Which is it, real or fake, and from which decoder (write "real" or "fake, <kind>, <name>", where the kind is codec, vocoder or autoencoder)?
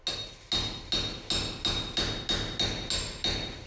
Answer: real